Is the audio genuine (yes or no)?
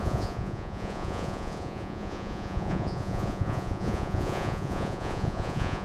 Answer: no